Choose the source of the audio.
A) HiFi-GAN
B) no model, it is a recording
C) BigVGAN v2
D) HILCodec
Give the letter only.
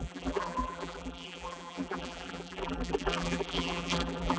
C